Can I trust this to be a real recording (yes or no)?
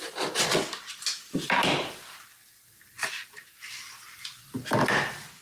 no